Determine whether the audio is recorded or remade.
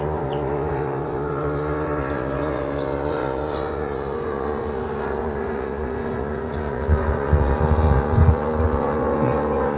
remade